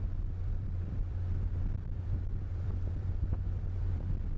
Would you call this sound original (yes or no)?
no